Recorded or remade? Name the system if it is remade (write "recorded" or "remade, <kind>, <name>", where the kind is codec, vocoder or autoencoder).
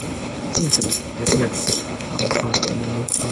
remade, codec, HILCodec